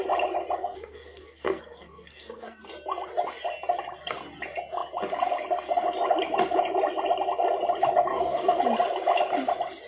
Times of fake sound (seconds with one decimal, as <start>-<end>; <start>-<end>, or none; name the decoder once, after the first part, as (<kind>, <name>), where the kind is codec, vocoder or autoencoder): 0.6-2.6 (codec, SNAC); 8.1-8.6